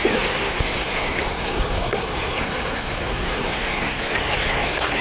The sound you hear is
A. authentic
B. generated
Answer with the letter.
B